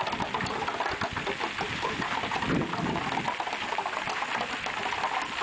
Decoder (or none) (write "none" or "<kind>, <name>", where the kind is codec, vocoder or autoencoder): none